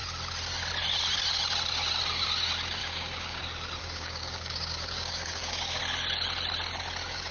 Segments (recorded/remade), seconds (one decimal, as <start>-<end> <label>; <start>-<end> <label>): 0.0-2.8 recorded; 2.8-3.4 remade; 3.4-3.8 recorded; 3.8-5.8 remade; 5.8-7.3 recorded